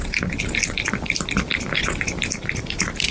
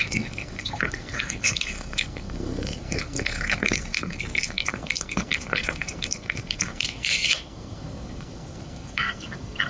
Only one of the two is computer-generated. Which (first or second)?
second